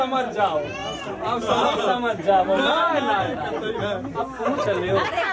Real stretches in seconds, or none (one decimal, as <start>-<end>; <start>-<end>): 0.0-5.3